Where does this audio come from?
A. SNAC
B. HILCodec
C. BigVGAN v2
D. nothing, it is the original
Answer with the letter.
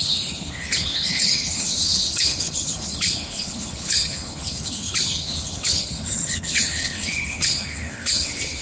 B